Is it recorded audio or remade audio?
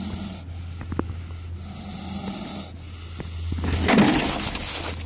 recorded